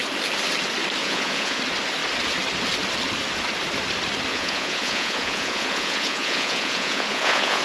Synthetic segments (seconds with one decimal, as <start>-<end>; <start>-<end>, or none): 1.0-1.6; 4.3-7.6